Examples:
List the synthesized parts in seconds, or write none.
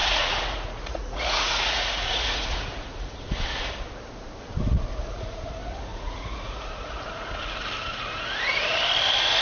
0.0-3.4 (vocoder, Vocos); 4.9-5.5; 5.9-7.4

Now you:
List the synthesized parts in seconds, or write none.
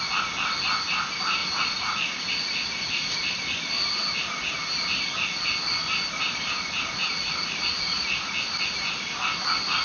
1.4-2.3 (vocoder, Vocos); 7.3-8.3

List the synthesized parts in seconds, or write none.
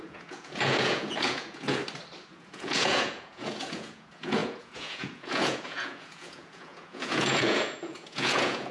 0.0-1.8 (vocoder, Vocos); 2.3-8.7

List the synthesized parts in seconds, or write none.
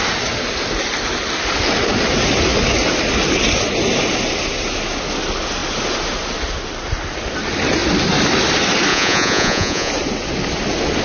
8.9-9.9 (vocoder, Vocos)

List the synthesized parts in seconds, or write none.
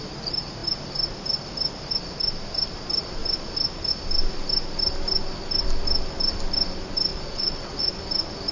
7.1-7.9 (vocoder, Vocos)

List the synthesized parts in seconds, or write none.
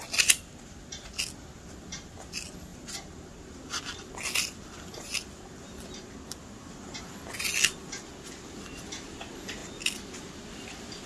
none